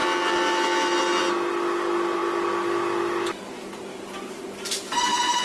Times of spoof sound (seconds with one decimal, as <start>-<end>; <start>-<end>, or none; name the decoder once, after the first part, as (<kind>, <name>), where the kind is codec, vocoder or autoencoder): none